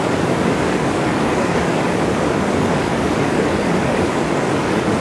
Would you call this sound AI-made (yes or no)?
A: yes